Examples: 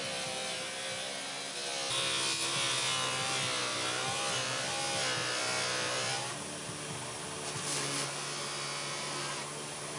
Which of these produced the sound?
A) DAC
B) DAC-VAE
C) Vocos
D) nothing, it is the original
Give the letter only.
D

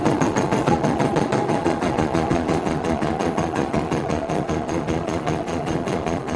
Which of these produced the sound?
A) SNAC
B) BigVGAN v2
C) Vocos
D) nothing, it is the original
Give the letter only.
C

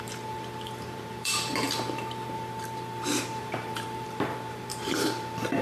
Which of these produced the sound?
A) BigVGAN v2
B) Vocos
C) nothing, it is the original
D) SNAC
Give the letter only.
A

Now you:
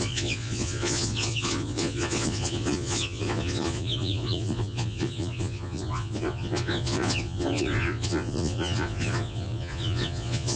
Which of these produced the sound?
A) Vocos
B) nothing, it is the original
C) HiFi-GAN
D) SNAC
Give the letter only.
A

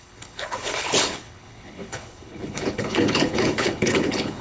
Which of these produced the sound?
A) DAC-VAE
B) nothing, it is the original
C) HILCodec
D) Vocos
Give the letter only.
C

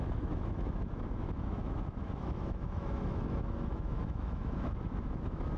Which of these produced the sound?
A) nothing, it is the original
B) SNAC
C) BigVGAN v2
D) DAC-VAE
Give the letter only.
D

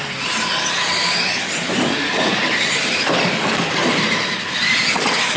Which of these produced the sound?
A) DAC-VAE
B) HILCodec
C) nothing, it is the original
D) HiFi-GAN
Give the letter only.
C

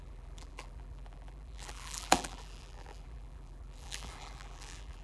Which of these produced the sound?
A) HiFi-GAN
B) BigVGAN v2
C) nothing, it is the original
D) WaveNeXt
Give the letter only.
B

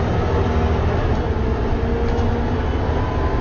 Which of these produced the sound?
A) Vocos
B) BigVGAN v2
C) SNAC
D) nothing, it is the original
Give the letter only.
D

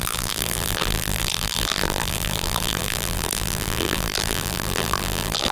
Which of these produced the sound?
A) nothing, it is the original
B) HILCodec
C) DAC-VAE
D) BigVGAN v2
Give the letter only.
D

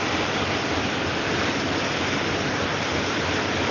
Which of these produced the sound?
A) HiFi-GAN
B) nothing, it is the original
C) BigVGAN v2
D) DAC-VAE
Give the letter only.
B